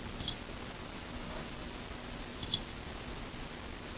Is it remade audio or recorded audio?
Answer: recorded